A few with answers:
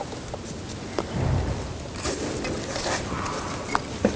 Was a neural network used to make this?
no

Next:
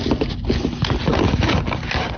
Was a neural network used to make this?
no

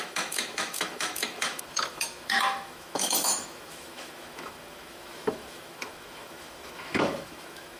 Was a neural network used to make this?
yes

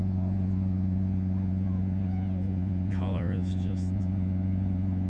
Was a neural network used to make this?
yes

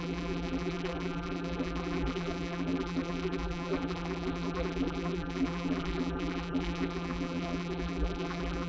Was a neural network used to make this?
yes